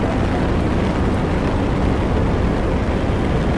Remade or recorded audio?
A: recorded